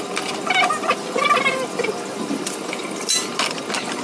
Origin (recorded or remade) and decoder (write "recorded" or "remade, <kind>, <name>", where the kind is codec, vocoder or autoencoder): recorded